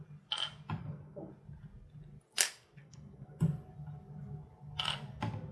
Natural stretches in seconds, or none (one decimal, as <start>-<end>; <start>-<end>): 0.0-0.8; 1.3-2.8; 3.4-5.5